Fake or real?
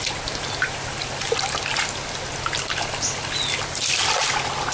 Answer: real